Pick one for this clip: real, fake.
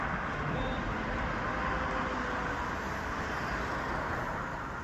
real